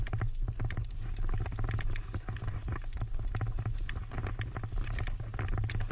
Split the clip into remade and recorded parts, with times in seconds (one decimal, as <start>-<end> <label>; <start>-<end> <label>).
0.0-5.9 recorded